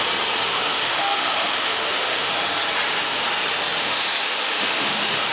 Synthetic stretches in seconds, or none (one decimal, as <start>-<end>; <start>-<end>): 0.5-2.3; 3.8-5.3